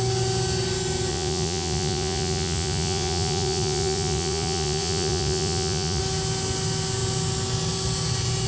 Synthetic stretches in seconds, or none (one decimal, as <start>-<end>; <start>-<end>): 1.1-6.0